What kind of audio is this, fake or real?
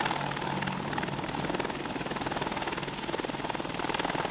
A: real